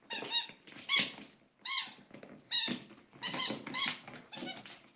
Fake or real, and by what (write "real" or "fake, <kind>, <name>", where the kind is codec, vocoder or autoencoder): real